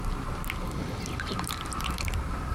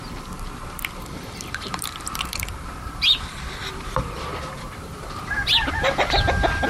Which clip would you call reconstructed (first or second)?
second